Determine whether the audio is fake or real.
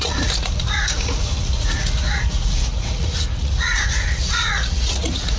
fake